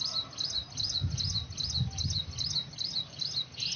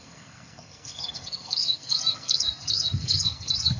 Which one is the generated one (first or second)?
second